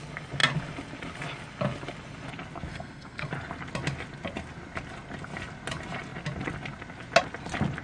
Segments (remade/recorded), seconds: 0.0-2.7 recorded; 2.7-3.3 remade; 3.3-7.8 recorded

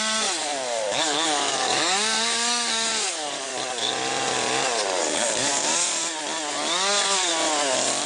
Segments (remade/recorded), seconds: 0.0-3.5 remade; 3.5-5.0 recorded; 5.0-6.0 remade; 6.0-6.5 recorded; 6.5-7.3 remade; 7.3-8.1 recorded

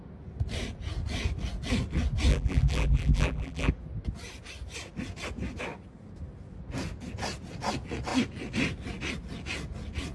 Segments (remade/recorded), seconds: 0.0-2.3 recorded; 2.3-3.7 remade; 3.7-10.1 recorded